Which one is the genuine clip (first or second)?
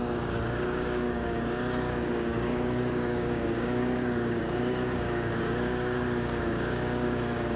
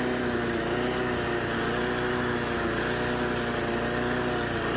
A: second